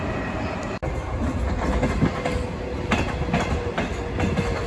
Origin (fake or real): real